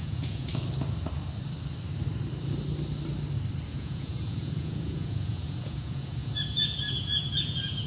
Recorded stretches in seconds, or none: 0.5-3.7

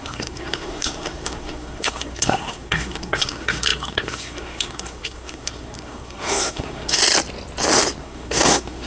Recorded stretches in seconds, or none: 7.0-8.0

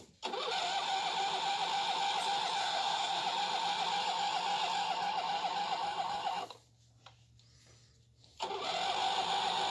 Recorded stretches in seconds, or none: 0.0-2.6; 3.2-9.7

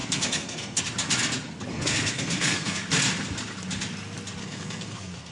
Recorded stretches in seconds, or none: 0.8-1.7; 2.8-4.4

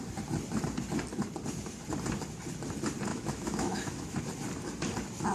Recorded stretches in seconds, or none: 0.0-3.1; 4.2-5.3

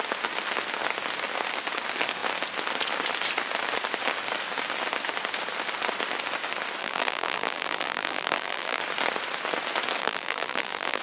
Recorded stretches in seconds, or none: 0.0-6.8; 8.8-10.0